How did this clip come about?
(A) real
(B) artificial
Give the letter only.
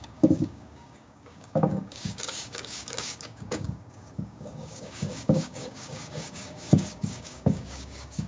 B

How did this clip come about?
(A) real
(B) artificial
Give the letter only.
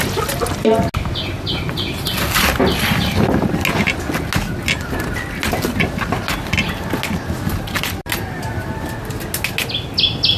A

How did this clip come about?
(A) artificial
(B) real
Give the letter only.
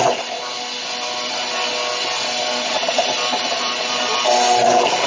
B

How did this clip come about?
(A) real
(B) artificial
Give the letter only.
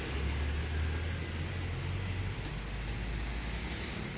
A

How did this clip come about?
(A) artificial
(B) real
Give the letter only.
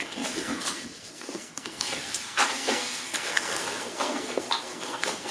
A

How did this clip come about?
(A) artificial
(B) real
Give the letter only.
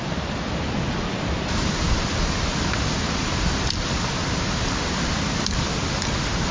B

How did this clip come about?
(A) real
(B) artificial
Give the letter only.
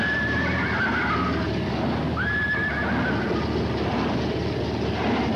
A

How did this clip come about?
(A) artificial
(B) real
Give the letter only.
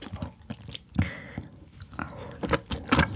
B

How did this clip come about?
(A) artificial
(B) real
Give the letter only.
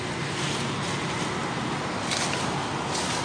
B